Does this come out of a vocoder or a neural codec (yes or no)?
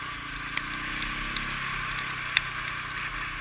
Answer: no